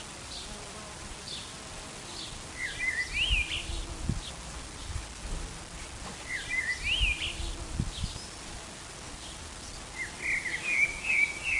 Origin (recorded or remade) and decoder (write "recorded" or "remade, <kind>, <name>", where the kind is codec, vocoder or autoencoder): recorded